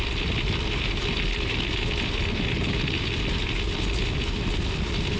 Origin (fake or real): real